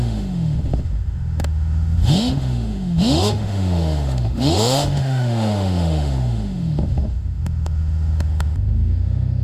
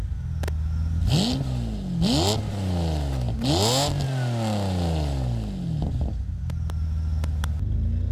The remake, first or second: first